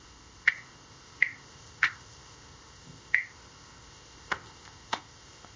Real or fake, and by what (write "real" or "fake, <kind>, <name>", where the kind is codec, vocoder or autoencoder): fake, codec, ZipCodec